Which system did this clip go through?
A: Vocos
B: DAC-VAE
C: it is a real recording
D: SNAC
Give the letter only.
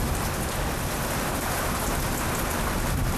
C